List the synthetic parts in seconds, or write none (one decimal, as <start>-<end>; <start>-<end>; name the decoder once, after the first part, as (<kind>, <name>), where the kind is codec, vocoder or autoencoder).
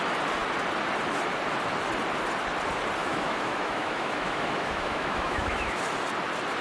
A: 3.0-5.8 (autoencoder, DAC-VAE)